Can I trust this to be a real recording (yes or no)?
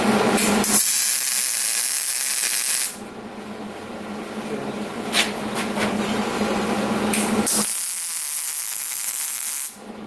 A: yes